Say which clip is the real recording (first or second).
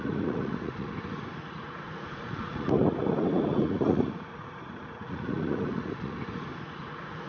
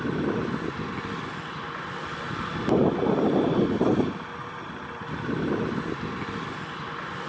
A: second